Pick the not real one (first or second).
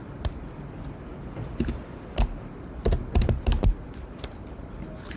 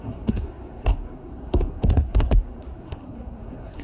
second